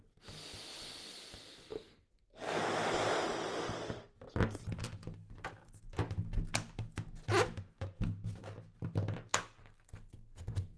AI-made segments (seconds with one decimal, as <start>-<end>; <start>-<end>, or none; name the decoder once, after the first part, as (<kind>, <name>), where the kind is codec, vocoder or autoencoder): 1.7-2.6 (codec, SNAC); 9.6-10.8